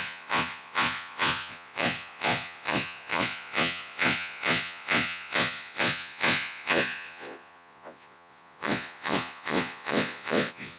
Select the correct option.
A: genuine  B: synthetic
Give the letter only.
B